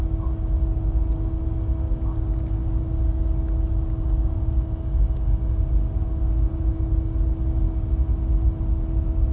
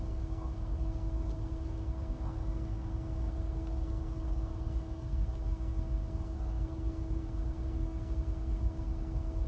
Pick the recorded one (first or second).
first